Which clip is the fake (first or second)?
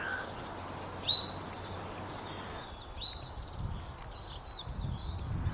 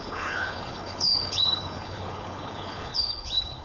second